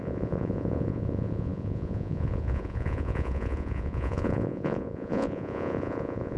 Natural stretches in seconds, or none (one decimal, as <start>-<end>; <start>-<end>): none